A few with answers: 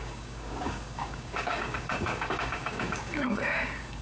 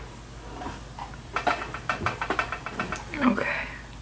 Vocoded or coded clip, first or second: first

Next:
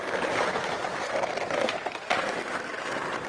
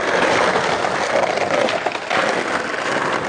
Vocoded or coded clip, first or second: first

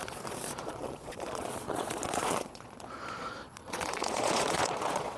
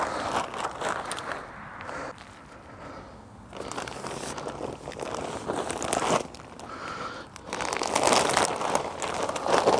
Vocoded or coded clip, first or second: first